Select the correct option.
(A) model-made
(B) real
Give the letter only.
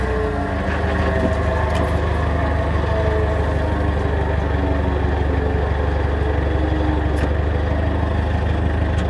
B